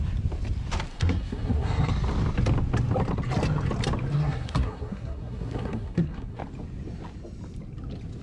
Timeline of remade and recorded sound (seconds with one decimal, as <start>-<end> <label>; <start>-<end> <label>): 0.0-0.9 recorded; 0.9-1.9 remade; 1.9-4.1 recorded; 4.1-6.4 remade; 6.4-8.2 recorded